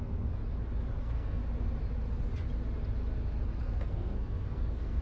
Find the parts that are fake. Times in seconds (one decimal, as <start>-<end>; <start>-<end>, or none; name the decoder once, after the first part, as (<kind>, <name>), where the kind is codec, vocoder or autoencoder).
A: 0.0-0.4 (codec, SNAC); 1.0-1.4; 3.6-5.0